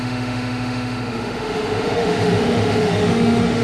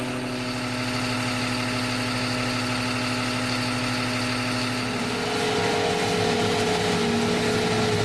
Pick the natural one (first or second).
second